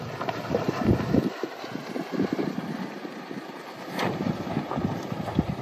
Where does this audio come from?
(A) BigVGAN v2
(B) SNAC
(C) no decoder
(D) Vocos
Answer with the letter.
A